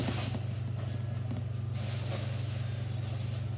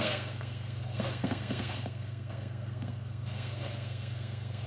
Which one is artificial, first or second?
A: second